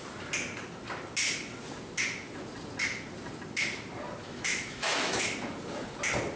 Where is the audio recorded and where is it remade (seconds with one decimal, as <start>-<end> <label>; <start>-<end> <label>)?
0.0-4.2 recorded; 4.2-5.2 remade; 5.2-6.4 recorded